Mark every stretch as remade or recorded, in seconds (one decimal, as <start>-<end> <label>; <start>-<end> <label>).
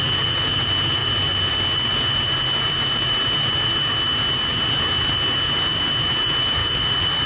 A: 0.0-7.3 recorded